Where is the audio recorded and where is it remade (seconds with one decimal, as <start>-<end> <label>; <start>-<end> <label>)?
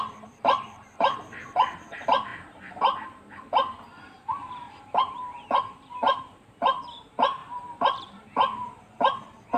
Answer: 0.0-9.6 remade